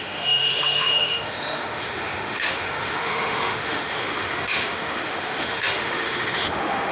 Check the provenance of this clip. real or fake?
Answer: fake